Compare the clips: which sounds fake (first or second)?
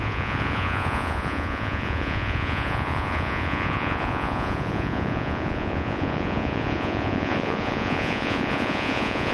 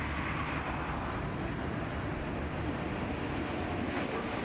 first